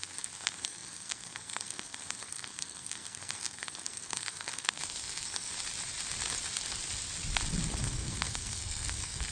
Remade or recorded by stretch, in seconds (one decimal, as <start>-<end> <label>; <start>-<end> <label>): 0.0-5.5 remade; 5.5-7.8 recorded; 7.8-9.3 remade